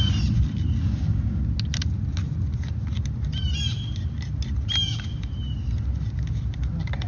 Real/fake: real